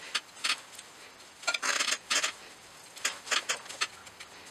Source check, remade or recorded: recorded